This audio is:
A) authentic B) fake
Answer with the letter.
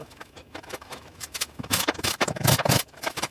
B